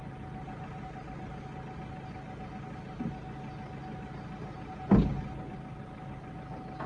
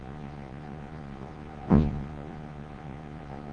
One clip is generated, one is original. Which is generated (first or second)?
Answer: second